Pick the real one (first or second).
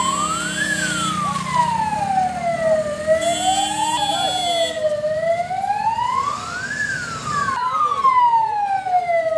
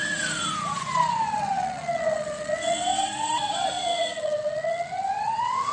first